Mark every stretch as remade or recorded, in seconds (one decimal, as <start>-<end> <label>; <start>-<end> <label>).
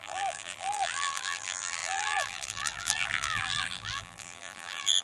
0.0-5.0 remade